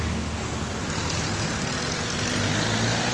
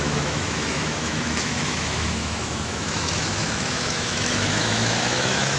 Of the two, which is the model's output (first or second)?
second